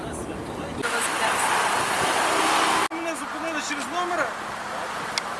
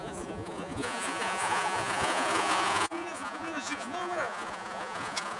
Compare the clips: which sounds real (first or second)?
first